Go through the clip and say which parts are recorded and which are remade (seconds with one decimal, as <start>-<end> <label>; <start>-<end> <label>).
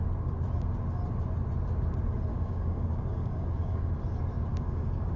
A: 0.0-2.3 recorded; 2.3-3.9 remade; 3.9-4.5 recorded; 4.5-5.2 remade